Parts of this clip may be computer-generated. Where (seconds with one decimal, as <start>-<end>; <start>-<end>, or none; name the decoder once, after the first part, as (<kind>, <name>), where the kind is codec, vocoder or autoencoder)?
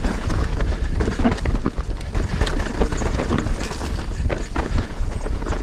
0.0-0.5 (vocoder, Vocos); 2.8-3.3; 4.6-5.6